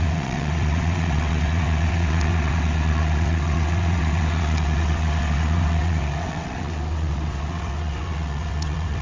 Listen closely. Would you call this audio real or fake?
fake